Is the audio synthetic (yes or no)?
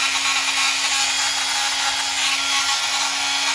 no